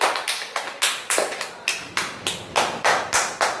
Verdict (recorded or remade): recorded